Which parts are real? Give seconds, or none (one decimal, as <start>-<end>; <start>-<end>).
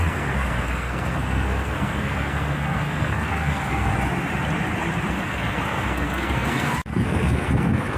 3.9-5.1